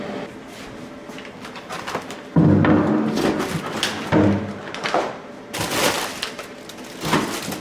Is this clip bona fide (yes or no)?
yes